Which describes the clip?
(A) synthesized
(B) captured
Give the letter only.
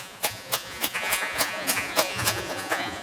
A